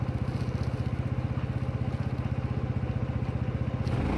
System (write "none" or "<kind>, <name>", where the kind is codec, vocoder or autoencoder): none